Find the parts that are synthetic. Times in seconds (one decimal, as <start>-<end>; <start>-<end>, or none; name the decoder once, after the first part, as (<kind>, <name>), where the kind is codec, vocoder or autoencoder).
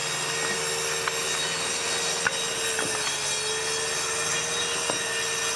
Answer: none